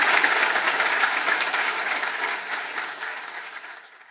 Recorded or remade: remade